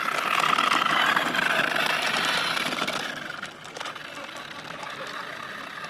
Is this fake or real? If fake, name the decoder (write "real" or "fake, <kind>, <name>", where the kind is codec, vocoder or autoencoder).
real